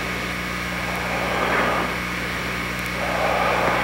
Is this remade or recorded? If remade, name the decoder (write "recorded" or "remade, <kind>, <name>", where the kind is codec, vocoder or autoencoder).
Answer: recorded